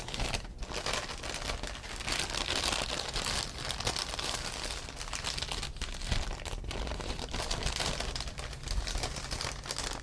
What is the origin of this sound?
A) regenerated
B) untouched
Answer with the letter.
B